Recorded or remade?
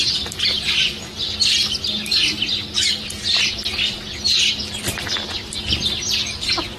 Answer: recorded